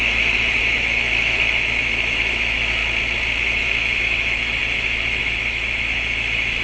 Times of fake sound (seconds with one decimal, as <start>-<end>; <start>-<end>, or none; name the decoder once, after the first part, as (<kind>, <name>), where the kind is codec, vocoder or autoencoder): 0.0-2.8 (autoencoder, DAC-VAE); 3.4-6.6